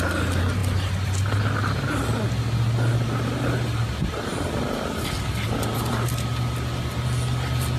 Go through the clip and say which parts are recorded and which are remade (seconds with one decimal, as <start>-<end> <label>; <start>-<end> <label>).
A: 0.0-7.8 recorded